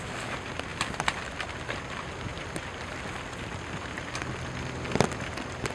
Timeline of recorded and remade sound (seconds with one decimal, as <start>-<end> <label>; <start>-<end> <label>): 0.0-5.7 recorded